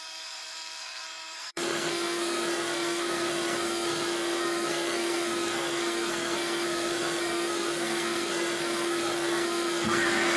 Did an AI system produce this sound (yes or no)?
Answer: yes